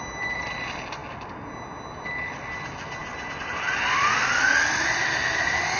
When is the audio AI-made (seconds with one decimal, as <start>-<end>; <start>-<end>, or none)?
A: none